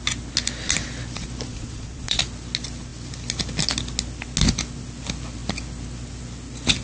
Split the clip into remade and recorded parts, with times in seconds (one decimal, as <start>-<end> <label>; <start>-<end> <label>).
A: 0.0-1.5 recorded; 1.5-2.2 remade; 2.2-6.8 recorded

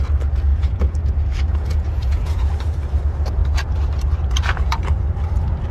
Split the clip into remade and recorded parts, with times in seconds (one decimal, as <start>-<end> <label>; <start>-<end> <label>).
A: 0.0-0.5 recorded; 0.5-1.0 remade; 1.0-1.5 recorded; 1.5-2.5 remade; 2.5-5.7 recorded

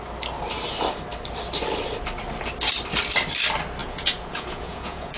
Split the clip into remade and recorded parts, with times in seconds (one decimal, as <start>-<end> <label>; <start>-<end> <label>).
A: 0.0-3.8 recorded; 3.8-5.2 remade

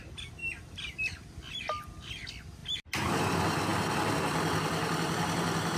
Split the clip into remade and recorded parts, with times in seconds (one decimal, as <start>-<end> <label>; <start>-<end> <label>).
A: 0.0-5.8 recorded

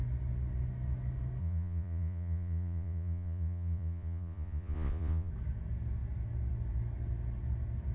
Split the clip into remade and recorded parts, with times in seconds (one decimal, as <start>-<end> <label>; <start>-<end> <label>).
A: 0.0-1.4 recorded; 1.4-5.3 remade; 5.3-7.9 recorded

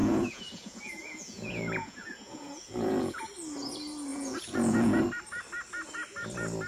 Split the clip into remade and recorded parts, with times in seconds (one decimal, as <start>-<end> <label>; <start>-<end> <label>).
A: 0.0-3.2 remade; 3.2-4.1 recorded; 4.1-5.0 remade; 5.0-6.7 recorded

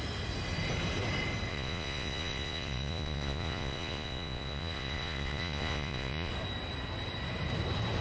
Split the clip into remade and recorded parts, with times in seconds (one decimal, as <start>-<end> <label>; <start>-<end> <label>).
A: 0.0-1.5 recorded; 1.5-6.3 remade; 6.3-8.0 recorded